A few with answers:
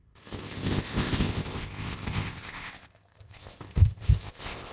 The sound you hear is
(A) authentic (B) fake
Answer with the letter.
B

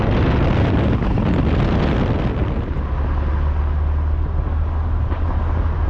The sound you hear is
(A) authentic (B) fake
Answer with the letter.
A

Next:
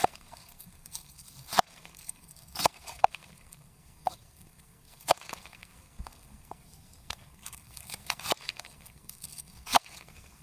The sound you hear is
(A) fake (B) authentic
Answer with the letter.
A